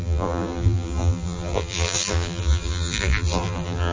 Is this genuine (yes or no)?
no